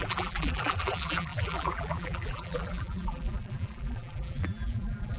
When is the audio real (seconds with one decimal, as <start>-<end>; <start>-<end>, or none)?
none